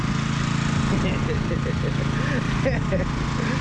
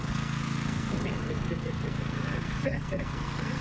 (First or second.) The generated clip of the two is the second